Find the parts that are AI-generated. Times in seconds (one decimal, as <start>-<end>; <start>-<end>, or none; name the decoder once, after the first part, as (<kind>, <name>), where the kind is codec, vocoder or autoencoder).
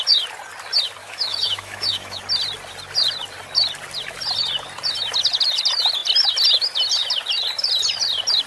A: 1.0-2.2 (autoencoder, DAC-VAE)